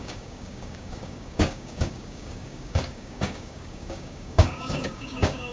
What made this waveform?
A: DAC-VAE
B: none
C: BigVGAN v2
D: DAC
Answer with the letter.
D